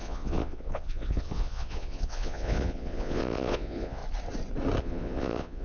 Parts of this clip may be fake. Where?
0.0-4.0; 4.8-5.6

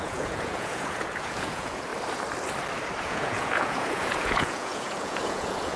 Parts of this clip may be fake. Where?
0.0-1.9; 3.0-5.8